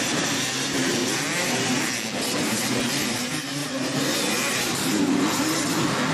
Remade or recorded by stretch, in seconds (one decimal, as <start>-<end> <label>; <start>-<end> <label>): 0.0-1.0 remade; 1.0-2.3 recorded; 2.3-6.1 remade